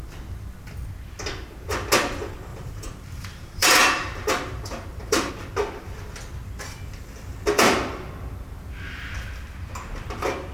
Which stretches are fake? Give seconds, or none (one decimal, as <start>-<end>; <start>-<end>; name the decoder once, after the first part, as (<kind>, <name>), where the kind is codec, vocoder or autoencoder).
2.5-5.3 (vocoder, BigVGAN v2)